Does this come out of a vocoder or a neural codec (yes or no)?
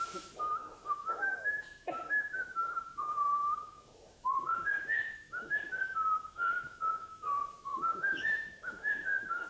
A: yes